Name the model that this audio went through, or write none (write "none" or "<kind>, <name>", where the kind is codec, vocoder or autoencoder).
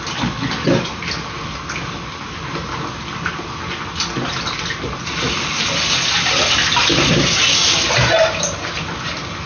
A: none